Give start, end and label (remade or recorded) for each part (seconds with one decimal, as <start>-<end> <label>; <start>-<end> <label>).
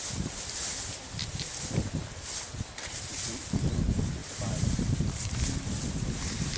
0.0-4.2 recorded; 4.2-5.5 remade; 5.5-6.6 recorded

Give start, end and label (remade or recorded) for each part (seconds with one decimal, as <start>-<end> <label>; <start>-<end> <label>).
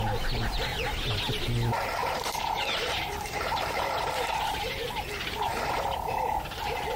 0.0-2.0 recorded; 2.0-4.7 remade; 4.7-7.0 recorded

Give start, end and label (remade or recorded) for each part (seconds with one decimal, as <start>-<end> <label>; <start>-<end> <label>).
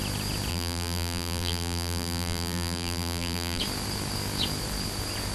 0.0-0.5 recorded; 0.5-3.6 remade; 3.6-5.3 recorded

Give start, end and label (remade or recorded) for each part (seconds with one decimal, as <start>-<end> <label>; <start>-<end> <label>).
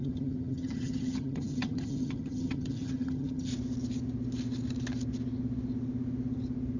0.0-3.5 remade; 3.5-6.8 recorded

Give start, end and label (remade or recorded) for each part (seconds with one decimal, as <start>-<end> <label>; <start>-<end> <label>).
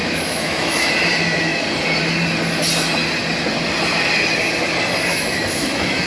0.0-0.9 remade; 0.9-5.1 recorded; 5.1-6.1 remade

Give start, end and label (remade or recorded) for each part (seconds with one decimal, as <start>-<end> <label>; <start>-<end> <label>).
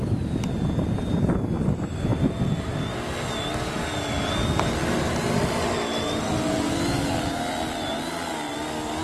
0.0-9.0 recorded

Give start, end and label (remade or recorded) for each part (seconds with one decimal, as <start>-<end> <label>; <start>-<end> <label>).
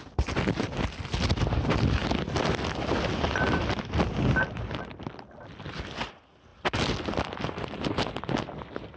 0.0-9.0 recorded